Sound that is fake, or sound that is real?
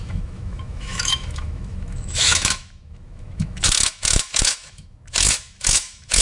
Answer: fake